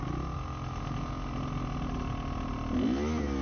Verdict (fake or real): real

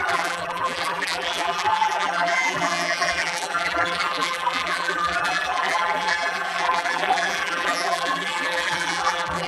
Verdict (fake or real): fake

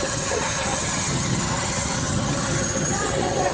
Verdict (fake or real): fake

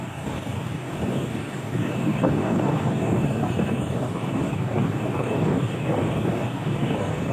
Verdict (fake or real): fake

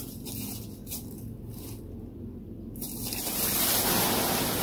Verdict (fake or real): real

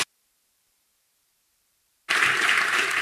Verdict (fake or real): fake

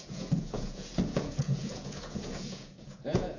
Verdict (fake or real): fake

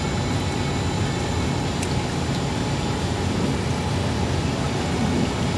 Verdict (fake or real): real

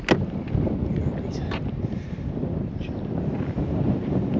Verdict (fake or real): real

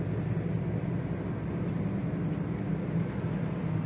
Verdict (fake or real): real